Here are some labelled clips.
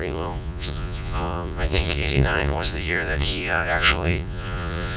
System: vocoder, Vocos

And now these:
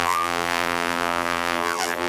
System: vocoder, BigVGAN v2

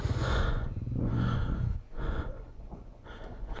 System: vocoder, Vocos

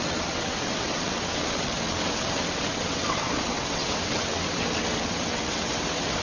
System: vocoder, WaveNeXt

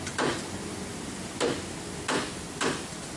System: none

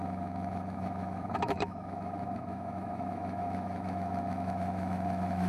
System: autoencoder, DAC-VAE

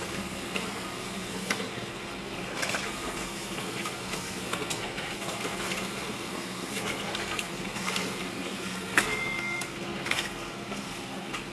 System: codec, SNAC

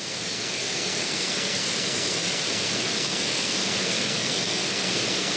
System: codec, SNAC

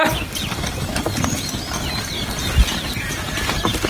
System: vocoder, BigVGAN v2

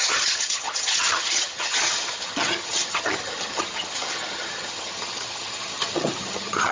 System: vocoder, HiFi-GAN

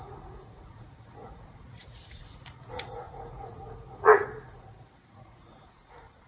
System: vocoder, Vocos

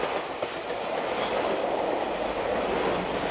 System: none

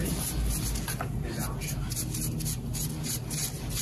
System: none